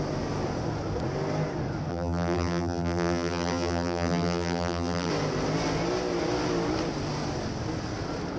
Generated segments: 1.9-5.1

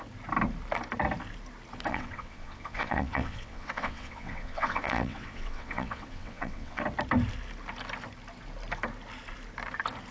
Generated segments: 1.9-6.8

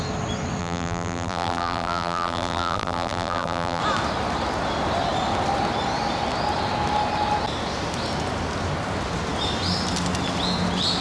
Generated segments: 0.6-3.8